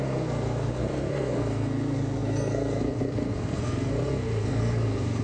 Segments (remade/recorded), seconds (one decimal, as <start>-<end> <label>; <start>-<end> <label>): 0.0-5.2 remade